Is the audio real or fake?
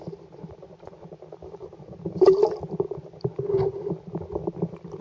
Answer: real